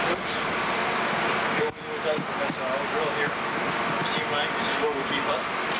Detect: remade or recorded recorded